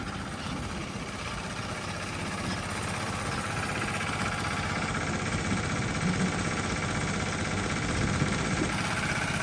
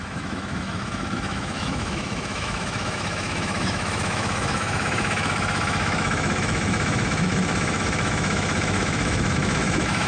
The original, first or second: first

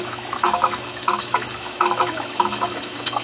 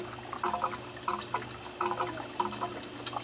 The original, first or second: second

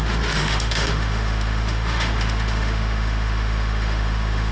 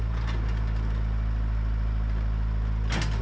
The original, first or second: second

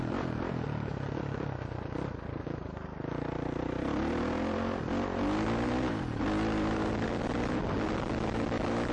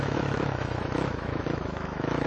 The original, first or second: first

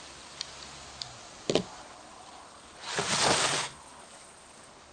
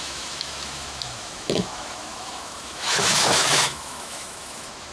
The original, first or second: first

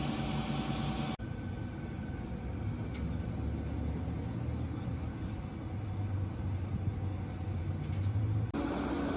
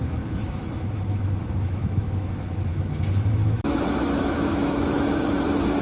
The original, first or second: first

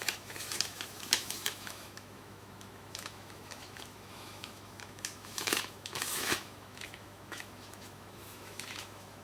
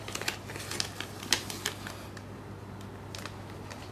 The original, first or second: second